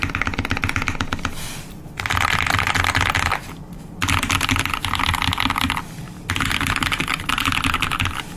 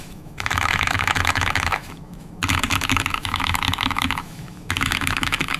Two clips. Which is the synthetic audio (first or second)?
second